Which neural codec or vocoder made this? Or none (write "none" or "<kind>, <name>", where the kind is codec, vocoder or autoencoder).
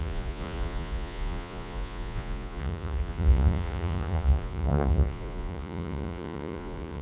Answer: vocoder, Vocos